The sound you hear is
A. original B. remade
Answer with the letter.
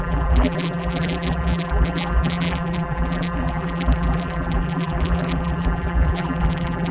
B